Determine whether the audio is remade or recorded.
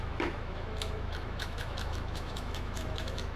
remade